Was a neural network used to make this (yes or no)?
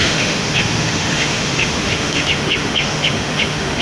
yes